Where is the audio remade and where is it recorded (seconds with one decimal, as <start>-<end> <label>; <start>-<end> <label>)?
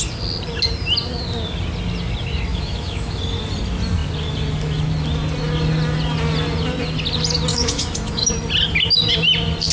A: 0.0-2.5 recorded; 2.5-3.2 remade; 3.2-7.5 recorded; 7.5-8.3 remade; 8.3-9.7 recorded